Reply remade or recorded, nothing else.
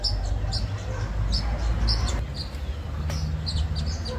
recorded